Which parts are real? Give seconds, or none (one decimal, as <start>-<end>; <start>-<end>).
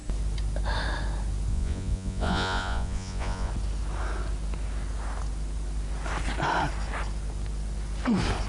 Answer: 0.0-1.5; 3.5-8.5